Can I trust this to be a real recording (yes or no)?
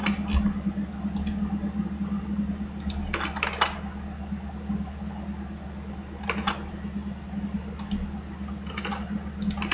yes